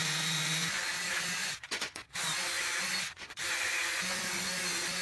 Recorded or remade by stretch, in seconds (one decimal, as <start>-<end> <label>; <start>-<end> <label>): 0.0-0.9 remade; 0.9-1.4 recorded; 1.4-4.4 remade; 4.4-5.0 recorded